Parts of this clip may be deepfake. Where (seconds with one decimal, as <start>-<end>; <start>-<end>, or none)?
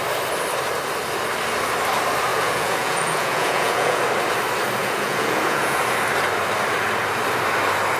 2.3-4.0; 4.8-5.8